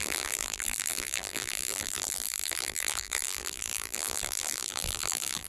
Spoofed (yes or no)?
yes